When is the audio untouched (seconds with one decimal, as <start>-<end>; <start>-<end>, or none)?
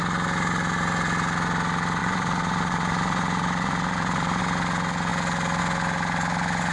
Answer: 0.0-2.0; 4.4-6.7